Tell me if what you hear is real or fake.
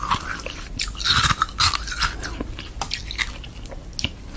real